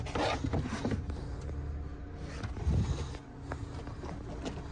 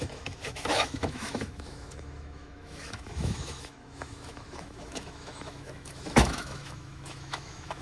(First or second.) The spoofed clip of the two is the second